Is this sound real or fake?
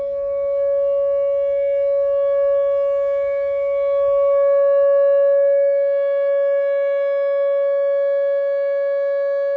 real